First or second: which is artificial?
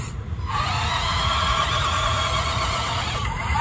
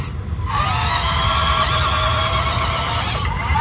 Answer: first